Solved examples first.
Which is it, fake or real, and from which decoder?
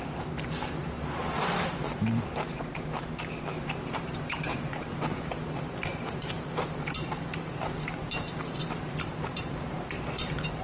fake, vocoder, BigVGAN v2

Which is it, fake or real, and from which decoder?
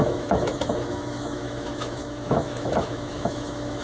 fake, autoencoder, DAC-VAE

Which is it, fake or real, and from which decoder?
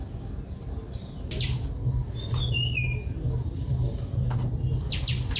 real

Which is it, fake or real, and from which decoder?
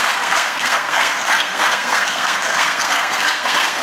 fake, codec, SNAC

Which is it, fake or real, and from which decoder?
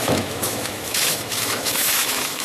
fake, autoencoder, DAC-VAE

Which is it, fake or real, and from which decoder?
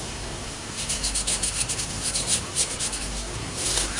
fake, codec, SNAC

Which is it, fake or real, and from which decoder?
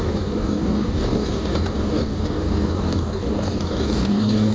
fake, codec, DAC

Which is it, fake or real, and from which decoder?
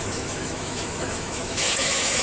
fake, autoencoder, DAC-VAE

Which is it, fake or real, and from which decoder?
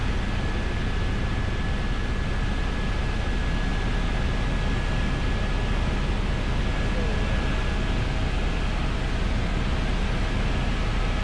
real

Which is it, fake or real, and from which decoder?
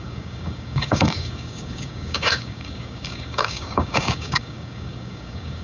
fake, codec, DAC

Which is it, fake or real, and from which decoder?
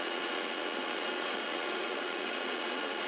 fake, vocoder, Vocos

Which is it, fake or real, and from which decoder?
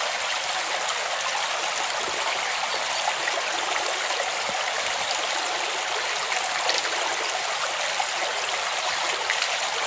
real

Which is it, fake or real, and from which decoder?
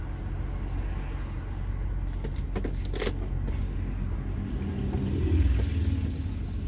real